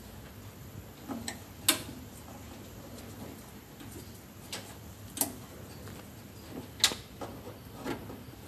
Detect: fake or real real